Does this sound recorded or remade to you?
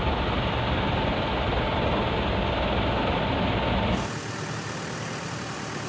recorded